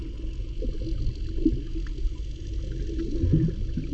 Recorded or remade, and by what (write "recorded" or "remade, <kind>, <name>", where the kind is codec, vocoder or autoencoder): recorded